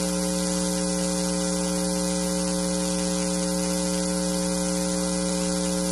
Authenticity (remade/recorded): recorded